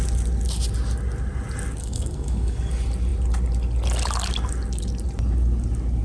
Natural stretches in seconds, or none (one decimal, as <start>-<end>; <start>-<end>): 0.0-1.8; 2.7-6.0